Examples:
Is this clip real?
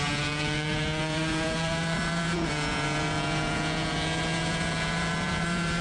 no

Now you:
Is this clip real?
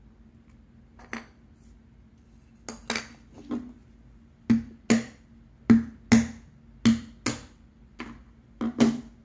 yes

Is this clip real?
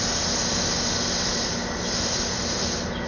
yes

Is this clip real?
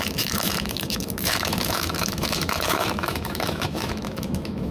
no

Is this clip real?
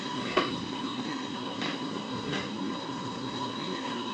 no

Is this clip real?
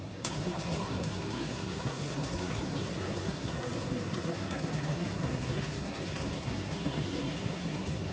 no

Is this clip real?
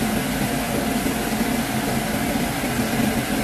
yes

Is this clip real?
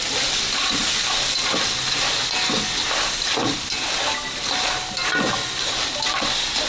yes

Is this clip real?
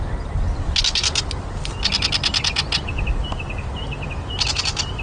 yes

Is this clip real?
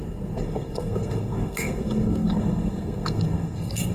no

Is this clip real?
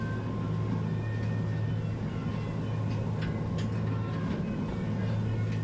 yes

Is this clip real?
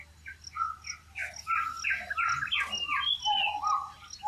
yes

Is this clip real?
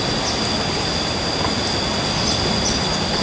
yes